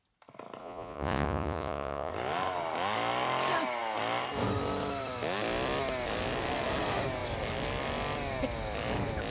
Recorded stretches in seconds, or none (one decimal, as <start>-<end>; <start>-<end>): 0.0-0.6; 2.1-9.3